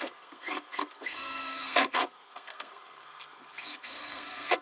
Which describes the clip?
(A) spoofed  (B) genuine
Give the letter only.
A